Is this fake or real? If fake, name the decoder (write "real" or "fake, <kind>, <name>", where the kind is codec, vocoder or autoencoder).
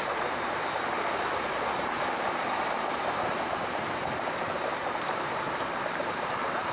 fake, vocoder, BigVGAN v2